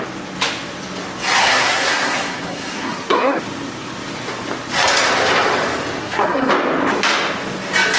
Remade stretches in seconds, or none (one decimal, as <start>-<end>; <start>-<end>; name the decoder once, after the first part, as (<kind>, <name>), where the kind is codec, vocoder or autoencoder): 1.4-3.4 (codec, SNAC); 6.0-6.5

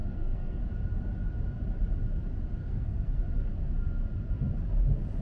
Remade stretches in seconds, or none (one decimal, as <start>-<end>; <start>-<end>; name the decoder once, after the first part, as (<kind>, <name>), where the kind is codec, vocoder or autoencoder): 0.0-0.6 (codec, SNAC); 2.6-3.2

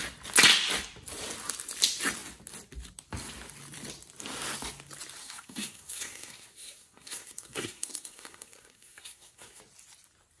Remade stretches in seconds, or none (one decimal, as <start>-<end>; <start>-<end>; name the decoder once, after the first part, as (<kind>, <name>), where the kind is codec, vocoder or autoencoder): 5.2-9.6 (codec, SNAC)